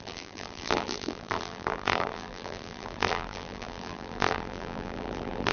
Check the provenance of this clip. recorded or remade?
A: remade